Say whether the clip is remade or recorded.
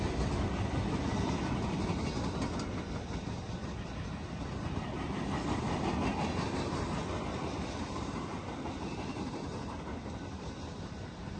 recorded